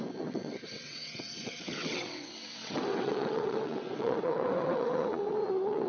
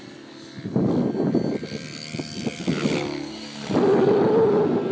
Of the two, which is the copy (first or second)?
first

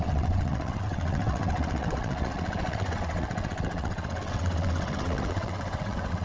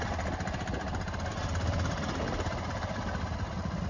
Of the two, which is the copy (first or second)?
first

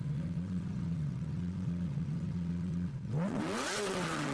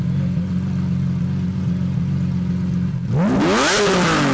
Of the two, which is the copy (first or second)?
first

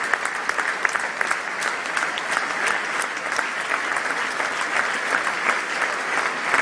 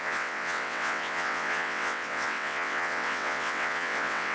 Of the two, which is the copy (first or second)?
second